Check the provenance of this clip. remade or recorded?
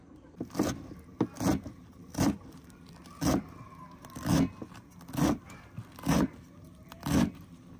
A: recorded